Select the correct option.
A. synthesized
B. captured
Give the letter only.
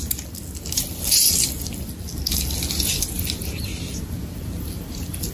B